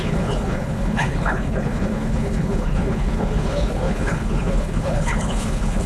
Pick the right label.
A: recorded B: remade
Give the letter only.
B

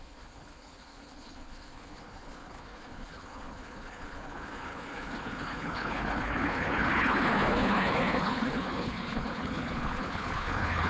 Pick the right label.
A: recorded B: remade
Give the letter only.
B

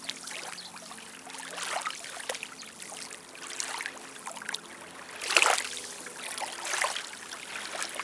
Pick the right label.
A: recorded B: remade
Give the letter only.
A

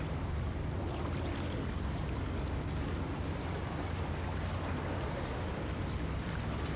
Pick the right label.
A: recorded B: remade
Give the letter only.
A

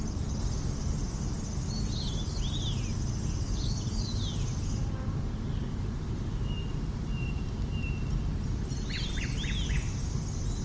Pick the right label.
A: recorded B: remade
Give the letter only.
A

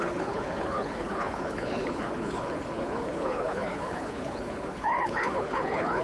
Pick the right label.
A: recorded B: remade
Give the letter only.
B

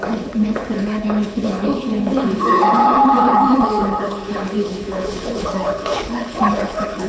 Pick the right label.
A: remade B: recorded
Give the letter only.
A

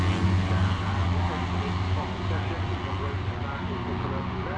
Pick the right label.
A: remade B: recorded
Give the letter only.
B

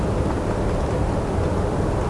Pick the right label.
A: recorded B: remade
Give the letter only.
A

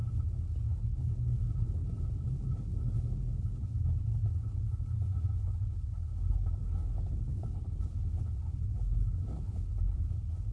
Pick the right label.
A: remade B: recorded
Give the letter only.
A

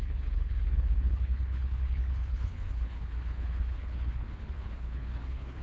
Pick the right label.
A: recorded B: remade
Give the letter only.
B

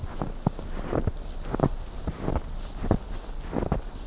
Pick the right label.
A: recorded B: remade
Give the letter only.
A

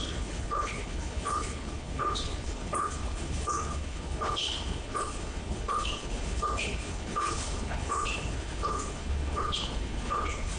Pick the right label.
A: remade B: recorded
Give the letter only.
A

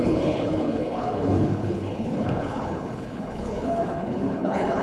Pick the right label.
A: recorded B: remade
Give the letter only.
B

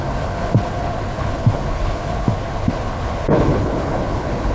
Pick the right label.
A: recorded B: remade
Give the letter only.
B